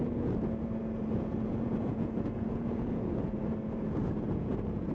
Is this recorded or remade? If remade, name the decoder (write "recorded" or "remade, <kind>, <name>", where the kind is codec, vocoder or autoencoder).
remade, vocoder, Vocos